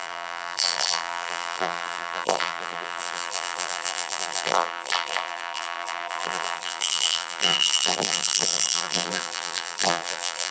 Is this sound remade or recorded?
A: remade